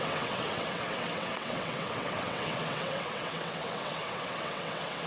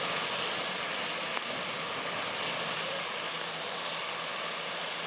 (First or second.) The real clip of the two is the second